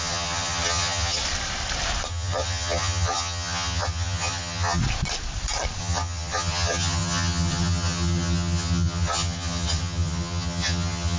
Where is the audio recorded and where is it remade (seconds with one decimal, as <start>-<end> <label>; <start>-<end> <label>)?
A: 0.0-1.2 remade; 1.2-2.1 recorded; 2.1-4.8 remade; 4.8-5.8 recorded; 5.8-11.2 remade